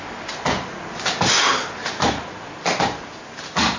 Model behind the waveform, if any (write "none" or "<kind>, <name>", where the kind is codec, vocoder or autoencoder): none